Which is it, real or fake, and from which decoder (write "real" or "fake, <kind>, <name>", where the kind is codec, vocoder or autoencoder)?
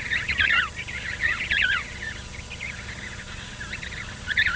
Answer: fake, vocoder, Vocos